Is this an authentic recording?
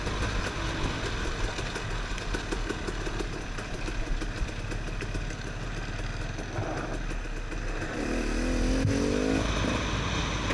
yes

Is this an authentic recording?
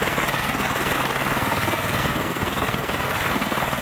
no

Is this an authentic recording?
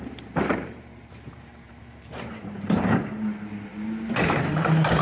no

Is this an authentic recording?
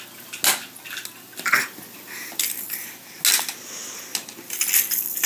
yes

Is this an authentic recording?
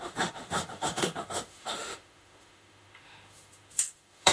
no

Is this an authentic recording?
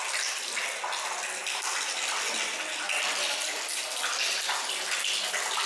yes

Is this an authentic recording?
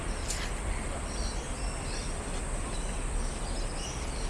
yes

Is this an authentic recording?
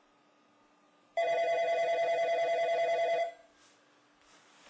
yes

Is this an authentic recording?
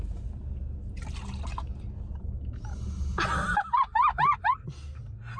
yes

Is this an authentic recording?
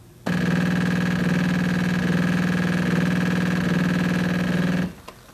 yes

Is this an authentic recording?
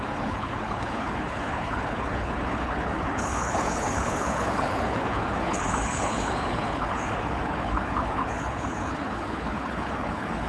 no